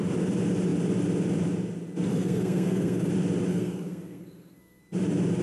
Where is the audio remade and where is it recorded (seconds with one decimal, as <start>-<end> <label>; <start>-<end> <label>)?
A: 0.0-2.1 recorded; 2.1-3.1 remade; 3.1-3.5 recorded; 3.5-4.8 remade; 4.8-5.4 recorded